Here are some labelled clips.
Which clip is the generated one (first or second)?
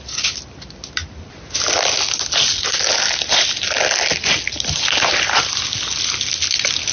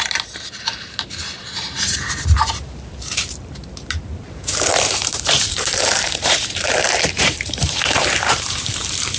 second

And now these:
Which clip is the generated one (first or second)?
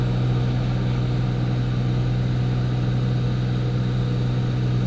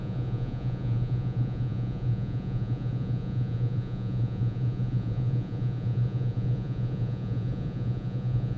second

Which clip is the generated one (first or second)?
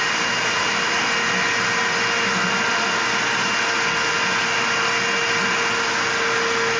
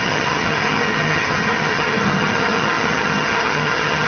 second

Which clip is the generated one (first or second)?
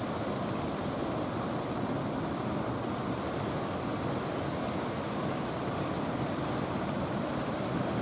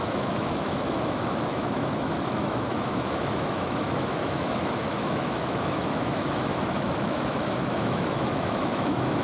second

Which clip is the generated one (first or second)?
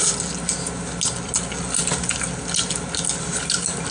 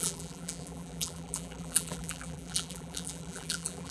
second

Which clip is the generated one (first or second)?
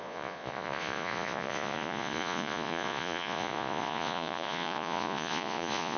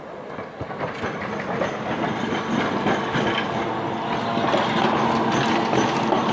first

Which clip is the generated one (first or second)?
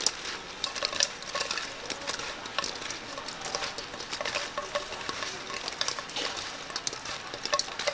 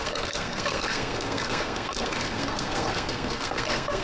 second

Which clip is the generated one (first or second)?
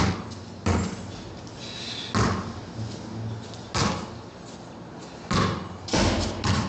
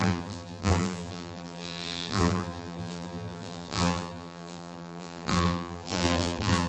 second